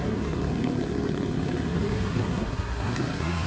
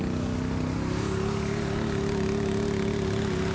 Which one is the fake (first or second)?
first